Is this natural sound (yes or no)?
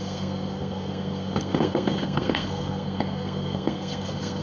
no